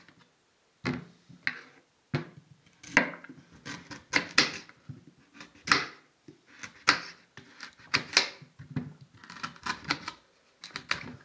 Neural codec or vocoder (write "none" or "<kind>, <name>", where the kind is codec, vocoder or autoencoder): none